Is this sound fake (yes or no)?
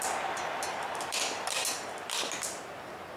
yes